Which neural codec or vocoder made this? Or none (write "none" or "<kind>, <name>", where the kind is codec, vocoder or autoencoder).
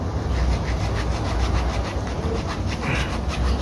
none